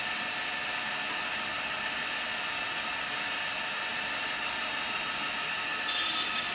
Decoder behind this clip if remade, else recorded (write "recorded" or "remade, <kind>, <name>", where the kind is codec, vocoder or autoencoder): recorded